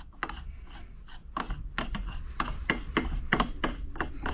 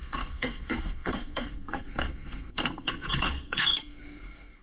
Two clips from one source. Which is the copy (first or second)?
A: second